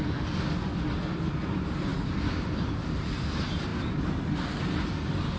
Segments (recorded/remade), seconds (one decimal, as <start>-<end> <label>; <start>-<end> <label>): 0.0-5.4 recorded